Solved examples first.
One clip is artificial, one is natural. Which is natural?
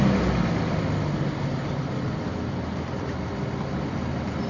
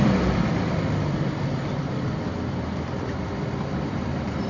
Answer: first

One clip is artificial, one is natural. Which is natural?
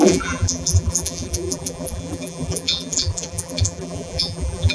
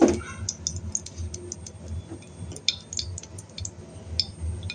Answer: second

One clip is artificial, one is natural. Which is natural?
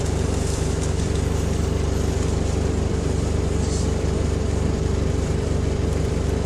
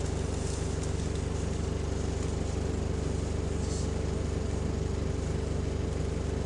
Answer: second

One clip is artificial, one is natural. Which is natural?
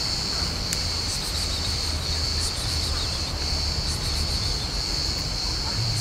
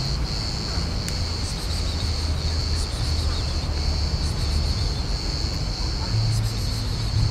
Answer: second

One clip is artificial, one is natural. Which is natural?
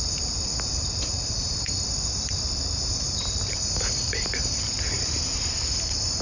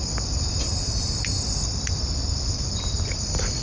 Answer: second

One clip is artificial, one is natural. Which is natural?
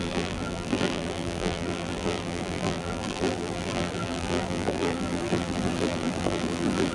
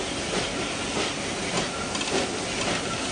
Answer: second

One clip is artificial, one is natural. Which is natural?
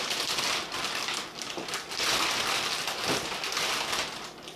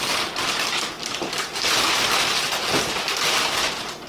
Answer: first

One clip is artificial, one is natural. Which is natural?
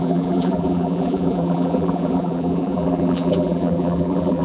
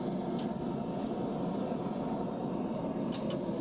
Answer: second